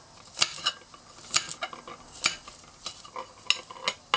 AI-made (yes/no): no